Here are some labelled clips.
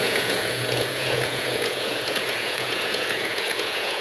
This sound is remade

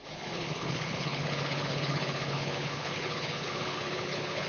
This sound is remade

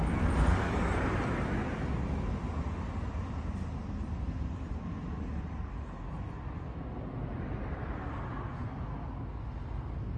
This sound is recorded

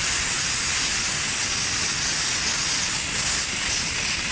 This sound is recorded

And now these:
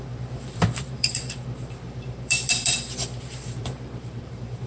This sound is remade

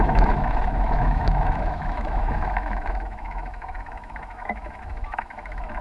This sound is remade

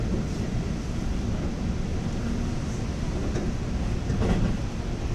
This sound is recorded